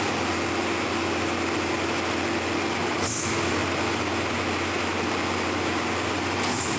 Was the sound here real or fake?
real